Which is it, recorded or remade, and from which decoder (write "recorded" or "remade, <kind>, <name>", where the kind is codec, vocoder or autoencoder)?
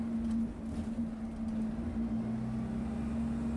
recorded